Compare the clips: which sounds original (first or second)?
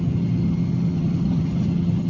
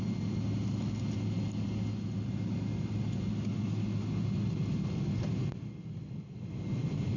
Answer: second